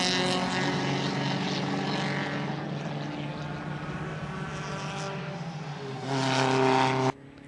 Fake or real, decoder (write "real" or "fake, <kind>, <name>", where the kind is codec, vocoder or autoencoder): real